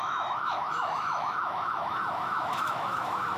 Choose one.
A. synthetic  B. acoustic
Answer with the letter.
A